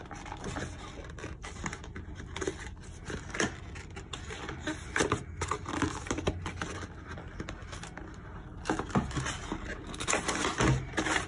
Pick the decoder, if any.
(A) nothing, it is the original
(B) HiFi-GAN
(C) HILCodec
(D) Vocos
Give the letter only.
A